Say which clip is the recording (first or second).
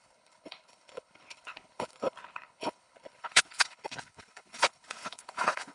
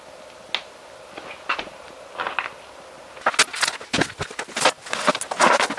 second